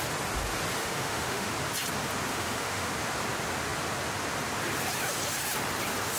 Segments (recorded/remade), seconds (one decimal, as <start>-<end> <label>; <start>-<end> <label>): 0.0-0.8 recorded; 0.8-1.5 remade; 1.5-2.3 recorded; 2.3-2.9 remade; 2.9-6.2 recorded